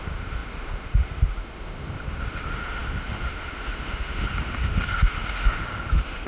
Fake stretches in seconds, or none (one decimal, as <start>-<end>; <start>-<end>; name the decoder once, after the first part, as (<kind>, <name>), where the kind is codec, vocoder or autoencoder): 0.0-6.3 (autoencoder, DAC-VAE)